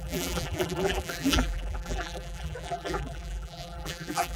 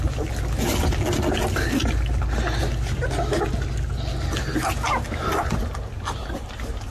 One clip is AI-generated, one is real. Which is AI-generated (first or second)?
first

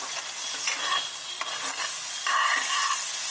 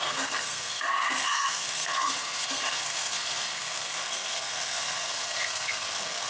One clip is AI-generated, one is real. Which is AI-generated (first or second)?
second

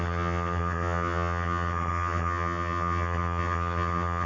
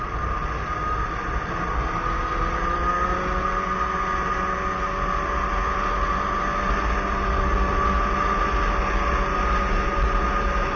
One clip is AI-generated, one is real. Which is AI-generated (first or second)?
first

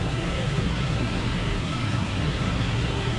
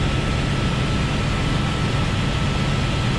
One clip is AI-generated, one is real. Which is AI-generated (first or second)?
first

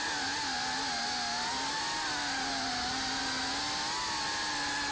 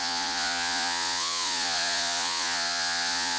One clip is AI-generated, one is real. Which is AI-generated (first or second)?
second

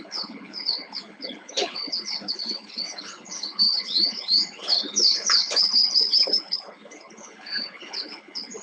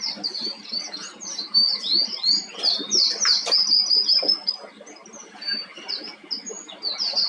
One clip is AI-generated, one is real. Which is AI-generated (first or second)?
first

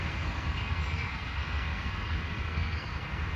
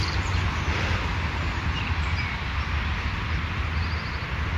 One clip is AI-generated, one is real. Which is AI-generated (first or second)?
first